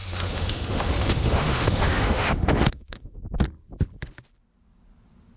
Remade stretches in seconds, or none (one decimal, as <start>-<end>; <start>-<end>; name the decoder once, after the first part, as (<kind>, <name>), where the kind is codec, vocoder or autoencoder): 0.0-3.2 (autoencoder, DAC-VAE)